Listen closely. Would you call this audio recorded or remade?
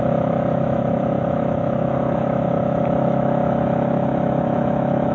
remade